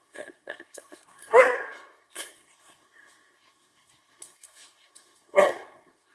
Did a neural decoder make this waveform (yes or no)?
yes